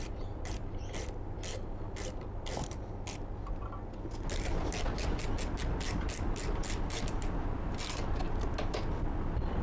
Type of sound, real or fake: real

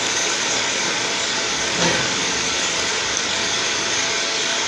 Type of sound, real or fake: fake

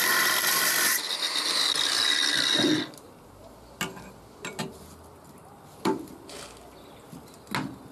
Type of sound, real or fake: real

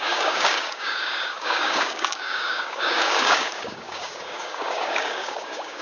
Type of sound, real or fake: fake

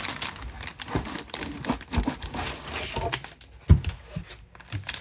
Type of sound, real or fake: real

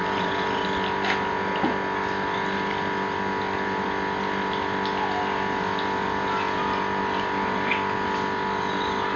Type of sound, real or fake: real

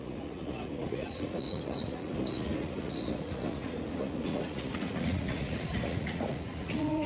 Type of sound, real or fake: fake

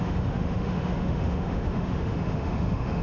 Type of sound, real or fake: fake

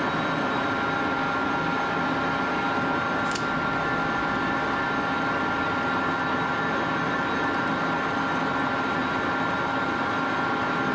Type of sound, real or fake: real